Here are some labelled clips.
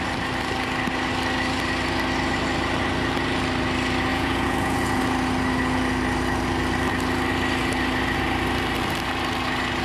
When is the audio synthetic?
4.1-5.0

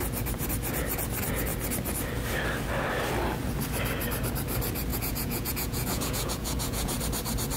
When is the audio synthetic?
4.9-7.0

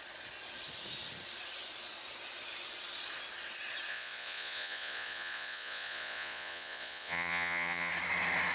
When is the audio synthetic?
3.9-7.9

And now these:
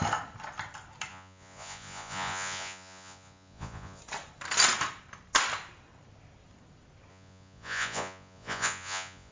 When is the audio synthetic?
1.1-4.0; 7.1-9.3

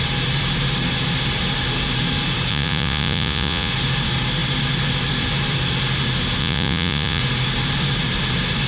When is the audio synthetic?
2.5-3.7; 6.4-7.2

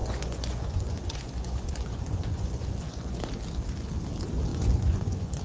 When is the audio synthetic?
0.0-3.2; 4.5-5.4